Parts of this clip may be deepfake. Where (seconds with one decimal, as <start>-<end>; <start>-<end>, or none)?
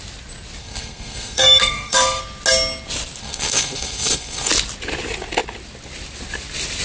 0.6-2.2; 3.2-4.5